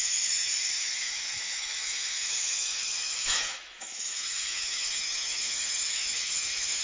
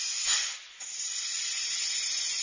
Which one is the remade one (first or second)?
first